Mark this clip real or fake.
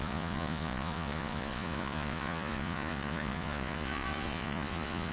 fake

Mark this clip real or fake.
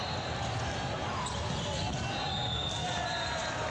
real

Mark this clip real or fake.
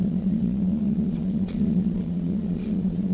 fake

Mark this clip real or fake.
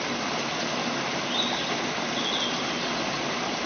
real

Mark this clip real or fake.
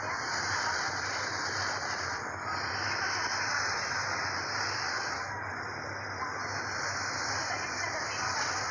real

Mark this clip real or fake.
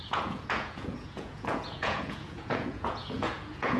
fake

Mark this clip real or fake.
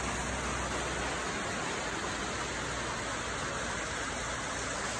real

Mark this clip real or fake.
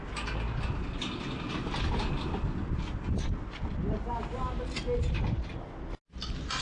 real